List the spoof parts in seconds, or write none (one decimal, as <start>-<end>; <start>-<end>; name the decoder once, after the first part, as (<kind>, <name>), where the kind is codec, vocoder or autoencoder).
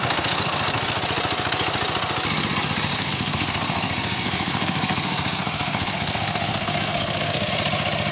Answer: 0.0-1.0 (codec, SNAC); 2.9-7.5